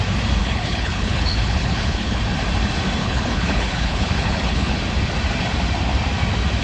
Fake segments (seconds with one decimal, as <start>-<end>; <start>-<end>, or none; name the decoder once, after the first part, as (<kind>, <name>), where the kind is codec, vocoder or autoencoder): 0.4-2.2 (codec, HILCodec); 3.0-4.8